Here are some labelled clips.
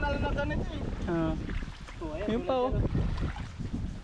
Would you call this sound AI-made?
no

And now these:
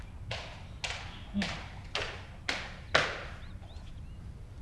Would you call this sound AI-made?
no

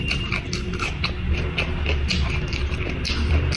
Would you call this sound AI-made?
no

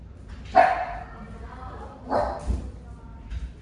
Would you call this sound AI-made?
no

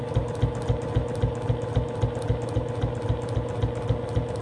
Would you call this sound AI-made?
no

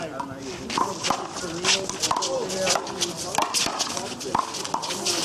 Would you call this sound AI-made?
no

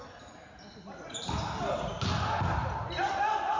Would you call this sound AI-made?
no